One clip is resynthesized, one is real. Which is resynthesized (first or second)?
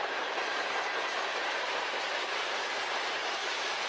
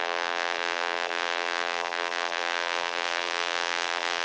second